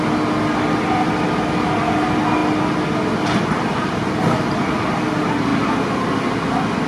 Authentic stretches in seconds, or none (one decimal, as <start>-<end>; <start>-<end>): 0.0-6.9